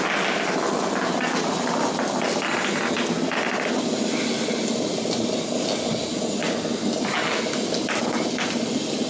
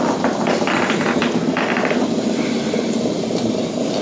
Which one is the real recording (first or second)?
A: first